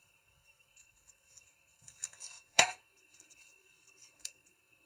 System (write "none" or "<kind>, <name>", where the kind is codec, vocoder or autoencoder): codec, SNAC